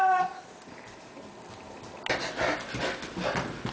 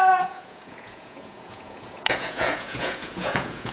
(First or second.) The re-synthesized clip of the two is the second